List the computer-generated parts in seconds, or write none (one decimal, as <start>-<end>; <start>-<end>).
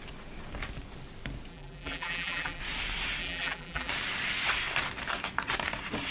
1.5-2.6; 3.2-3.9